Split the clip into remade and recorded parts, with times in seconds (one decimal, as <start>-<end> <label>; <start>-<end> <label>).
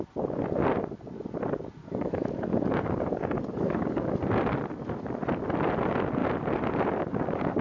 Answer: 0.0-1.8 recorded; 1.8-4.2 remade; 4.2-7.6 recorded